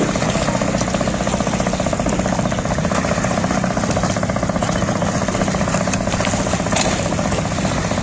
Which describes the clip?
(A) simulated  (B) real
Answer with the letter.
B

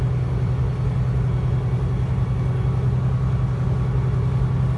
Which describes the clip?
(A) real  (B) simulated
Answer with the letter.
A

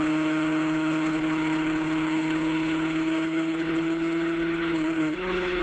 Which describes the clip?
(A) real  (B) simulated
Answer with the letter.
B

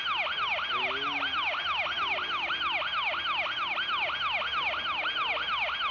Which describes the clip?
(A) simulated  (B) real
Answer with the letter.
B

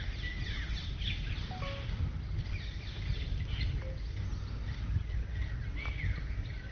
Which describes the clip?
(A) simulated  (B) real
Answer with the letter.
B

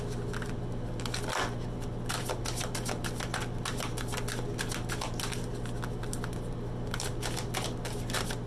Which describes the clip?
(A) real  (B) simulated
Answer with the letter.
A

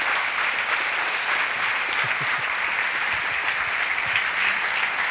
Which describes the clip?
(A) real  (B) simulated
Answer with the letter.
A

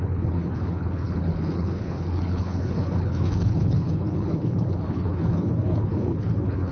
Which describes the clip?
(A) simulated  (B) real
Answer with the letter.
A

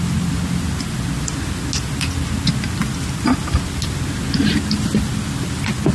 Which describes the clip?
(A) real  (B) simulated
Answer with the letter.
A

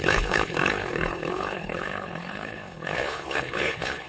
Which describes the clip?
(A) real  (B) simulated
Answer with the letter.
B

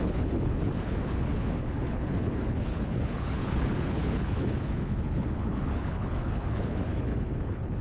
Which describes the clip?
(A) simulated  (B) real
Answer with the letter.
A